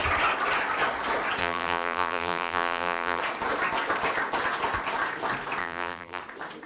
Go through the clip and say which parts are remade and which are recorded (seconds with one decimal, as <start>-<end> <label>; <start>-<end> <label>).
0.0-1.4 recorded; 1.4-3.2 remade; 3.2-5.6 recorded; 5.6-6.2 remade; 6.2-6.7 recorded